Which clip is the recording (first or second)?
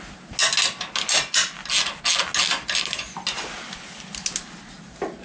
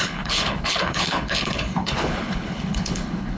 first